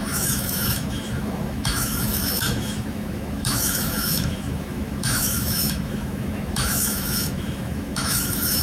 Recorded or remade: remade